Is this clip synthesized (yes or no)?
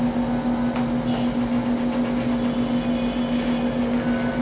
no